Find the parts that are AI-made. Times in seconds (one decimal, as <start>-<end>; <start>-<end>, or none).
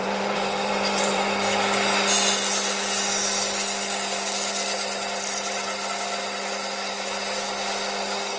0.0-1.3